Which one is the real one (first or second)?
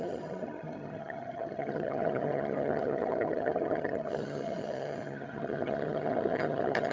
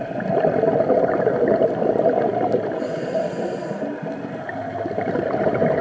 second